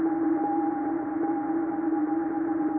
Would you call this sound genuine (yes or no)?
yes